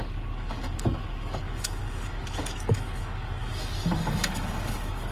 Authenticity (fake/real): fake